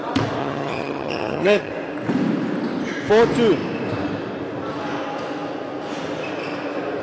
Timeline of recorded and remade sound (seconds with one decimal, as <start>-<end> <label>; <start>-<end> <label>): 0.0-0.4 recorded; 0.4-1.7 remade; 1.7-7.0 recorded

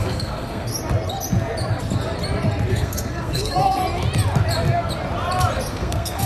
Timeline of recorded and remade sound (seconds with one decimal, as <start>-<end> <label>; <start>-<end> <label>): 0.0-0.7 remade; 0.7-2.7 recorded; 2.7-3.8 remade; 3.8-5.7 recorded; 5.7-6.3 remade